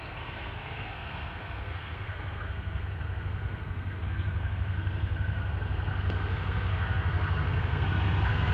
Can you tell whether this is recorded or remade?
remade